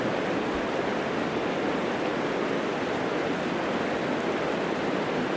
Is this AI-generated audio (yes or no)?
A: no